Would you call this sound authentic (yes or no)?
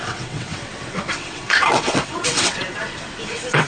no